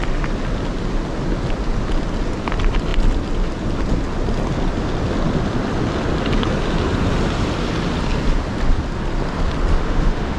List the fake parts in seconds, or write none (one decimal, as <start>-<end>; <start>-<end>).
9.7-10.4